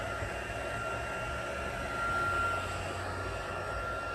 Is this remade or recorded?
recorded